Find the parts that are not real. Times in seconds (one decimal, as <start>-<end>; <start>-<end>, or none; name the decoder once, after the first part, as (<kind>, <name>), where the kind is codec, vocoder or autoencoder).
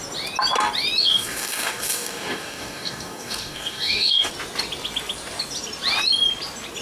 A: 1.0-4.3 (codec, DAC)